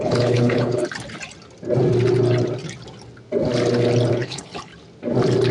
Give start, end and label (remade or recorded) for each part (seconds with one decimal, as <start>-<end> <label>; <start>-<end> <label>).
0.0-0.8 remade; 0.8-4.1 recorded; 4.1-4.7 remade; 4.7-5.5 recorded